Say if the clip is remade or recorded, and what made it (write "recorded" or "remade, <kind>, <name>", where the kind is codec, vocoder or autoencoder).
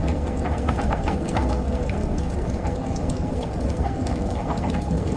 remade, codec, SNAC